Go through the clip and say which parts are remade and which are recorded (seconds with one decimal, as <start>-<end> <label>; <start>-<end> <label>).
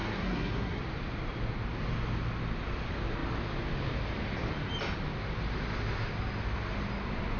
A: 0.0-0.8 remade; 0.8-7.4 recorded